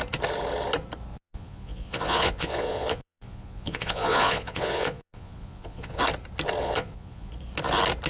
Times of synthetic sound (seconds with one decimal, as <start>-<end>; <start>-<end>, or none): 1.1-6.0; 6.6-7.3